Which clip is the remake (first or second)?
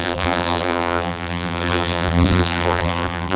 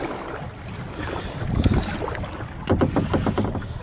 first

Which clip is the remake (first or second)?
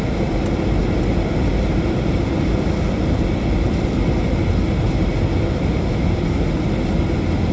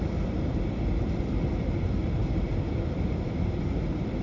second